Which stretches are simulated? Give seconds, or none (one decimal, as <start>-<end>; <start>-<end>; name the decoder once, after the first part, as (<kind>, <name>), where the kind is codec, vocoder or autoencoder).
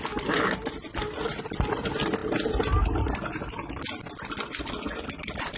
none